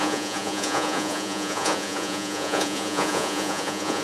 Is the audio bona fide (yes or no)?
no